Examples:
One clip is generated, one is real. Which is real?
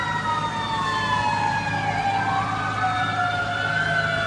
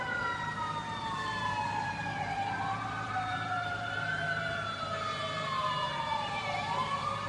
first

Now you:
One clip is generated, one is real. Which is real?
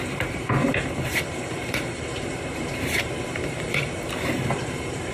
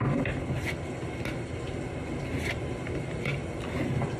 second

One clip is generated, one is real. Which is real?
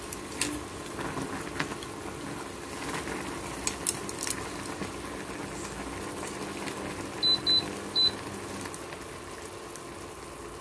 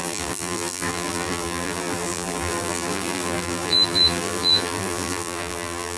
first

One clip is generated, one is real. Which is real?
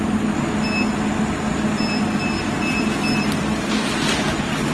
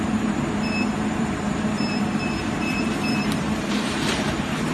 first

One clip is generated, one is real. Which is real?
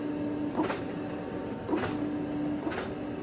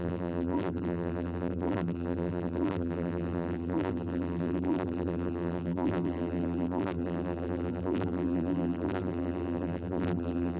first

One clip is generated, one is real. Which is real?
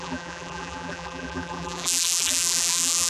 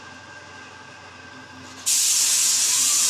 second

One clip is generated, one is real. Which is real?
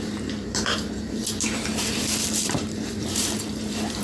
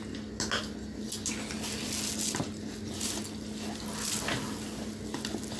second